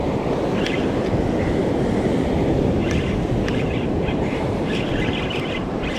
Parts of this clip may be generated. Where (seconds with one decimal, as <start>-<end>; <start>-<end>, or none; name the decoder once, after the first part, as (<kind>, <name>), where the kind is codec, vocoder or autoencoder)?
0.0-2.8 (vocoder, BigVGAN v2); 5.2-6.0